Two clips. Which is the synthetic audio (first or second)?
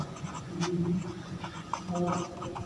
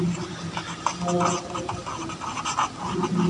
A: first